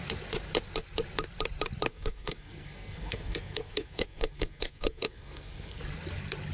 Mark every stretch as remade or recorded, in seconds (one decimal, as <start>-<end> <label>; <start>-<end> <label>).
0.0-1.9 recorded; 1.9-5.8 remade; 5.8-6.5 recorded